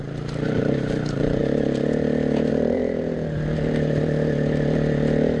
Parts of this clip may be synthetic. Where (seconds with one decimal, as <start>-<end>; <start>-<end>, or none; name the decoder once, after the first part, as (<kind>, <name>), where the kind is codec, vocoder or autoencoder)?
0.0-1.4 (vocoder, BigVGAN v2); 2.5-5.4